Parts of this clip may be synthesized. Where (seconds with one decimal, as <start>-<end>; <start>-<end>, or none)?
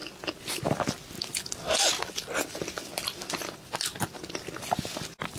none